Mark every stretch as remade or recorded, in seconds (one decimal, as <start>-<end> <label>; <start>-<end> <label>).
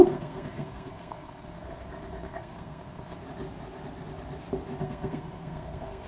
0.0-3.2 remade; 3.2-4.8 recorded; 4.8-6.1 remade